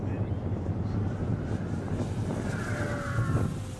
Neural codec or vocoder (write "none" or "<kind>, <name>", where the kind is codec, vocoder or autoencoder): none